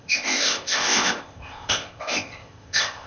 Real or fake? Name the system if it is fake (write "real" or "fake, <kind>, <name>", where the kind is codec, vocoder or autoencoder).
fake, codec, ZipCodec